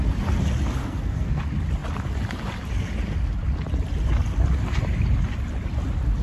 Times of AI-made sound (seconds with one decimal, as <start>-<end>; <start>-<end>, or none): 0.8-1.4